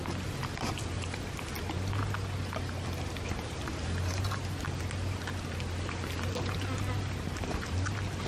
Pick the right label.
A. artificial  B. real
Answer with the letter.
B